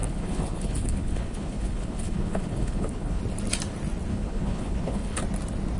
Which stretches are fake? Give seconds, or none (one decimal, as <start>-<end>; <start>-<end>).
0.0-3.2; 4.1-5.2